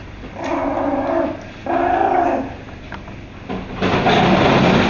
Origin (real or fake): real